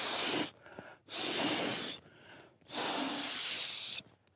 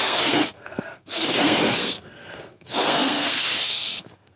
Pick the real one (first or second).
first